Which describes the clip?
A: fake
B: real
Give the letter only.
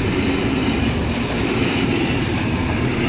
B